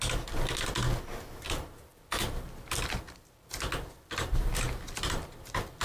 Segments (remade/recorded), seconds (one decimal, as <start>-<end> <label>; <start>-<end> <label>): 0.0-5.8 recorded